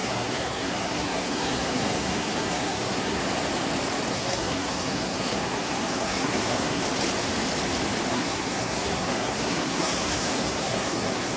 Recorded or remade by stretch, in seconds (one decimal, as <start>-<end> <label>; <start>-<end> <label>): 0.0-3.2 remade; 3.2-4.1 recorded; 4.1-6.8 remade; 6.8-8.1 recorded; 8.1-11.4 remade